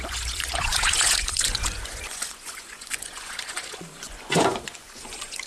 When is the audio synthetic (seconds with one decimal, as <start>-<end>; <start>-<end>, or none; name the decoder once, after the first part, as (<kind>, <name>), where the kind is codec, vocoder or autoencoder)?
0.0-5.5 (vocoder, Vocos)